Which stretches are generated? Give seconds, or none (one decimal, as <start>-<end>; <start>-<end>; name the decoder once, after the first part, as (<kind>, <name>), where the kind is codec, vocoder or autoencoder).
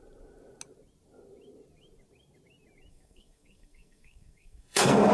2.9-5.1 (codec, SNAC)